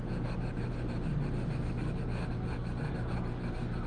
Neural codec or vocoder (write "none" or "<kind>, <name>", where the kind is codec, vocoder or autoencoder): none